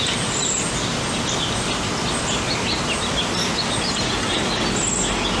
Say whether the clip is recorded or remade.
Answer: recorded